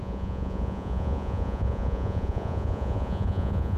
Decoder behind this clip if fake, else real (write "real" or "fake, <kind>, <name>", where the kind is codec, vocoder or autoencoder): fake, vocoder, Vocos